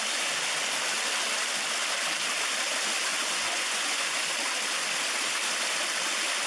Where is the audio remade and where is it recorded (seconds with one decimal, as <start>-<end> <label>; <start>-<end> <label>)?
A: 0.0-3.1 recorded; 3.1-4.3 remade; 4.3-6.5 recorded